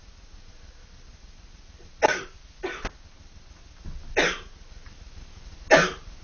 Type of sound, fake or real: real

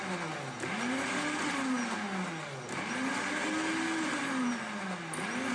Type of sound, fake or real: real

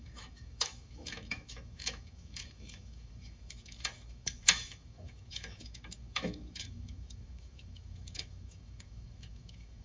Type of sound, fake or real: fake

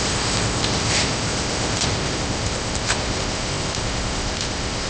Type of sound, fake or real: fake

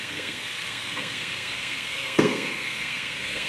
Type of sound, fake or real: fake